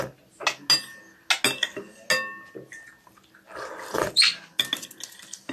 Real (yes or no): yes